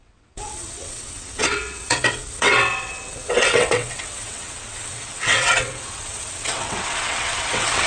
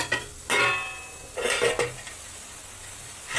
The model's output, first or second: first